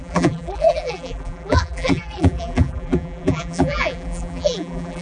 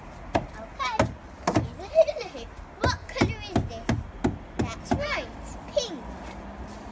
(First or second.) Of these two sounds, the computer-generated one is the first